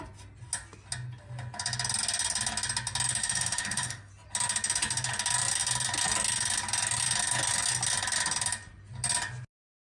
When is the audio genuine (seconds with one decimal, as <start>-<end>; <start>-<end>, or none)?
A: 0.0-3.2; 4.1-10.0